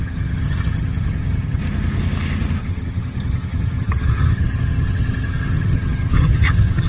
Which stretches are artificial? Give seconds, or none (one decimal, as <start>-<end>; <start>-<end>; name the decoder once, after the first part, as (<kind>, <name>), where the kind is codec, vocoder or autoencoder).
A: 0.0-1.6 (vocoder, HiFi-GAN); 2.6-6.9